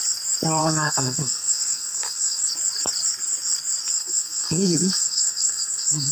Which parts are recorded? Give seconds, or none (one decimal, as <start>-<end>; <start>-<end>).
0.0-0.6; 2.5-3.9